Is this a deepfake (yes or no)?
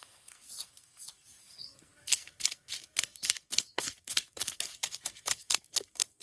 yes